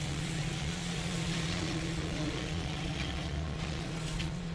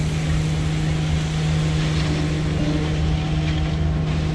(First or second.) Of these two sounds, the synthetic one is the first